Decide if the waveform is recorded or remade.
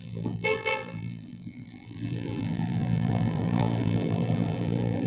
remade